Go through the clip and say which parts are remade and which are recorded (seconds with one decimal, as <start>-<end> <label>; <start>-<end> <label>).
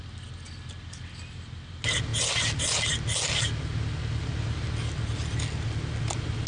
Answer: 0.0-6.5 recorded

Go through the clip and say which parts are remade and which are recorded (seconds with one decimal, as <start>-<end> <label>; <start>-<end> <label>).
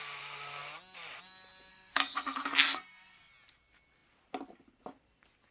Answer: 0.0-1.7 recorded; 1.7-3.3 remade; 3.3-5.5 recorded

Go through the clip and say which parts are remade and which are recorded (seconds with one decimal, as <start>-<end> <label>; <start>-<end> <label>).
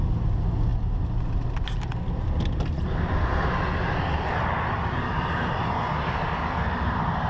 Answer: 0.0-7.3 recorded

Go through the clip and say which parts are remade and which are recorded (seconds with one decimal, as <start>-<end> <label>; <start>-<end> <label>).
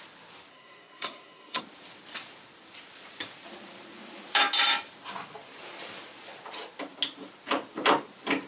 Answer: 0.0-0.5 recorded; 0.5-1.6 remade; 1.6-8.5 recorded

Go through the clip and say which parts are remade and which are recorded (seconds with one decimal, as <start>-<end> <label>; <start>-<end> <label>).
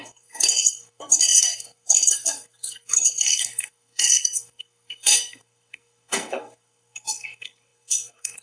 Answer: 0.0-8.4 remade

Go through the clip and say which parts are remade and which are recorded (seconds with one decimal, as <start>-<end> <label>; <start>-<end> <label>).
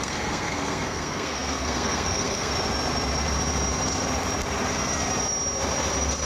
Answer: 0.0-2.5 remade; 2.5-6.3 recorded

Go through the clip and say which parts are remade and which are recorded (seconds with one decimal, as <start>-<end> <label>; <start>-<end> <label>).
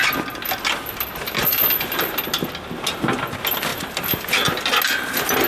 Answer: 0.0-5.5 recorded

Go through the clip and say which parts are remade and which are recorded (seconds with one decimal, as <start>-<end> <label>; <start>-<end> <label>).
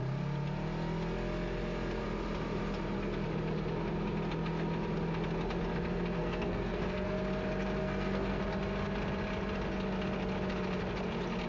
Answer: 0.0-6.2 recorded; 6.2-7.2 remade; 7.2-7.8 recorded; 7.8-8.4 remade; 8.4-11.5 recorded